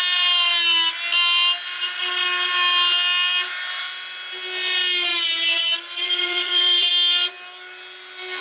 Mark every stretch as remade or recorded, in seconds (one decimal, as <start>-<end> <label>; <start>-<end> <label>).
0.0-5.1 recorded; 5.1-6.9 remade; 6.9-8.4 recorded